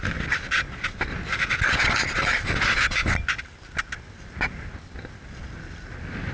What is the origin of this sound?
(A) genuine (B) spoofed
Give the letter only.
A